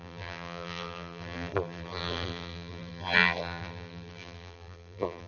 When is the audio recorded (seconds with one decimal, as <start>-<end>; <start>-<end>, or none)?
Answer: none

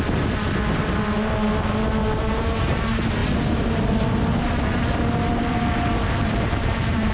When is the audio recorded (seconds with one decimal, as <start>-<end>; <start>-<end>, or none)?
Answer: 0.0-2.0; 2.6-6.2